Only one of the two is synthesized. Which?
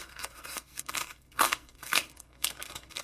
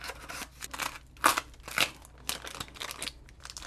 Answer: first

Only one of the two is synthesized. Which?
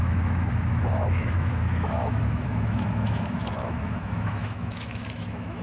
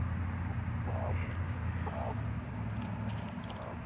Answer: first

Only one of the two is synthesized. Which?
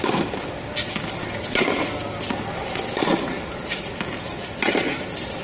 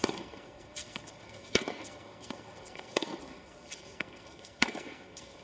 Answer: second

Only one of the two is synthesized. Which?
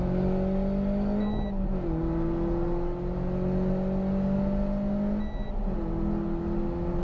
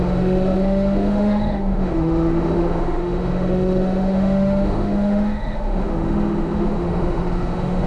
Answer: second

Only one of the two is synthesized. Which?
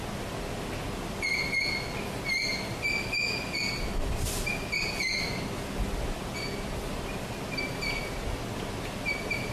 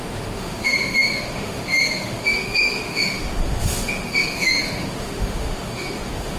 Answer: second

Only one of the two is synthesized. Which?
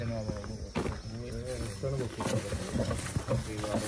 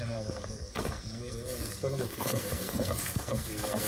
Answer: second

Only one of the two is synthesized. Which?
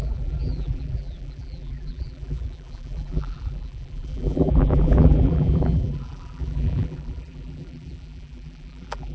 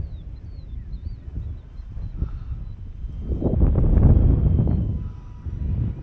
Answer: first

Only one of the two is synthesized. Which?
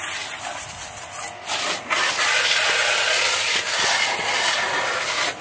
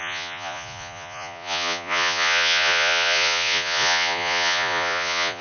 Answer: second